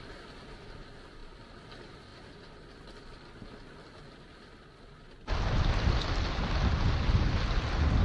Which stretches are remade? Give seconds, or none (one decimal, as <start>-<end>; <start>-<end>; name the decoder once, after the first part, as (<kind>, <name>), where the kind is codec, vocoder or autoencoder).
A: none